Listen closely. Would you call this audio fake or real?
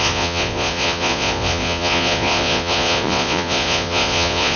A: fake